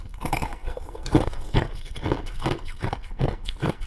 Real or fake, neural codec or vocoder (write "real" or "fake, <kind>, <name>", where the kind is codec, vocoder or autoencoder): fake, codec, SNAC